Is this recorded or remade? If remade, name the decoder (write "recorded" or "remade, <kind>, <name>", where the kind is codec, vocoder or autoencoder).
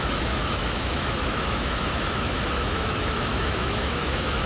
remade, autoencoder, DAC-VAE